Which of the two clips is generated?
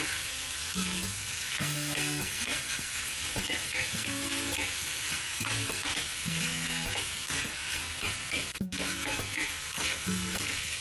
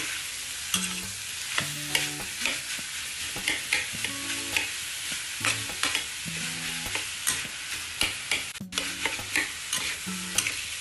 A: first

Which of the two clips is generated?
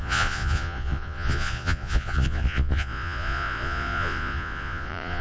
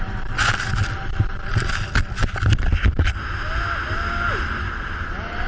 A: first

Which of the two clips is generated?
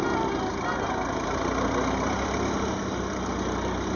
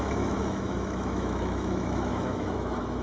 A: second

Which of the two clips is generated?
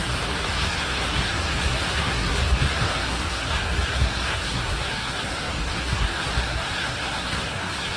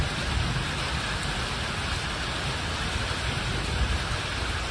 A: first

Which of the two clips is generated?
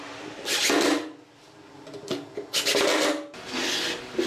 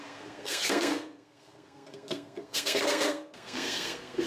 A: second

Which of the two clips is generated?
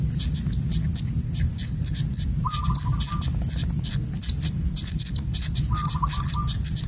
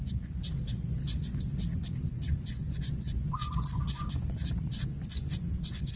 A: second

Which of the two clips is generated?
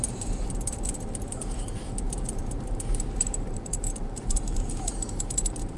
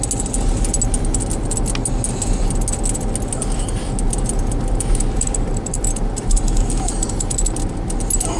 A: first